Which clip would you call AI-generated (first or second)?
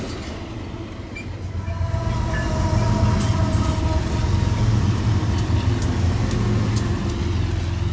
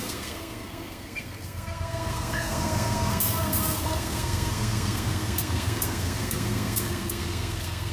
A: second